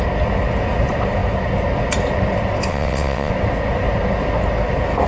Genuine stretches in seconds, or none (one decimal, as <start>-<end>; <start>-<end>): 0.0-2.7; 3.3-5.1